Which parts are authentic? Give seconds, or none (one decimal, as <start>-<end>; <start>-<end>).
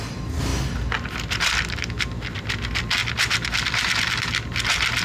0.0-3.0